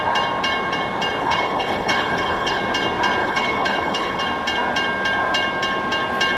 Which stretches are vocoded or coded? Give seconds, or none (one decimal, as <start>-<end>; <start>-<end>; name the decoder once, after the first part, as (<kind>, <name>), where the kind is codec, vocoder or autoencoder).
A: 1.2-2.6 (codec, HILCodec); 3.2-4.2